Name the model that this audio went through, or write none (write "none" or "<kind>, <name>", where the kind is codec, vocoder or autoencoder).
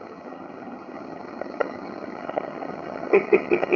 vocoder, HiFi-GAN